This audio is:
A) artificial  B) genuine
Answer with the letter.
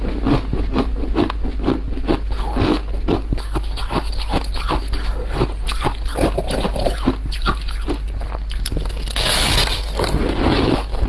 B